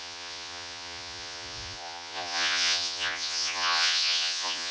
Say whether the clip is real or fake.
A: fake